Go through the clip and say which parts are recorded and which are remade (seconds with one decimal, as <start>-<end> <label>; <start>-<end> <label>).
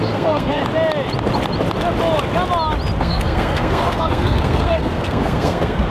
0.0-0.6 remade; 0.6-3.0 recorded; 3.0-5.9 remade